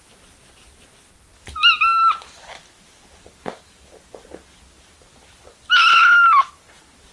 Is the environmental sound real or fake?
real